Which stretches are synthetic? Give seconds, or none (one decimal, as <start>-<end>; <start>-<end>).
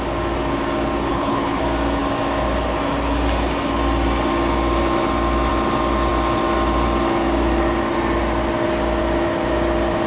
1.1-1.6